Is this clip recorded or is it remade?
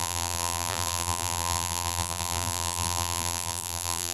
remade